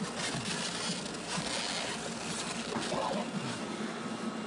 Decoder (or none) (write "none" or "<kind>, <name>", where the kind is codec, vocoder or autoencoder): none